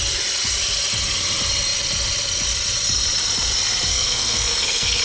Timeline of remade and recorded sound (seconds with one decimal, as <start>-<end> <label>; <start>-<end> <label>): 0.0-3.9 recorded; 3.9-5.0 remade